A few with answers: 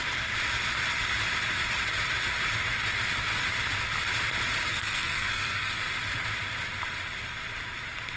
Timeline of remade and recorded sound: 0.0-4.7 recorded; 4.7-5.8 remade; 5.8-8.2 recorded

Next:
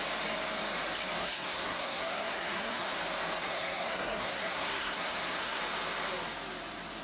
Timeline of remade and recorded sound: 0.0-1.2 recorded; 1.2-3.0 remade; 3.0-3.4 recorded; 3.4-5.6 remade; 5.6-7.0 recorded

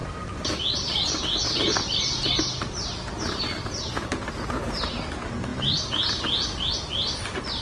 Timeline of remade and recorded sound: 0.0-7.6 recorded

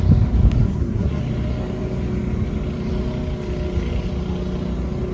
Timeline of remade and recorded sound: 0.0-0.6 recorded; 0.6-1.2 remade; 1.2-5.1 recorded